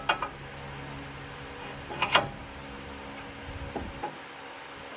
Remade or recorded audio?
recorded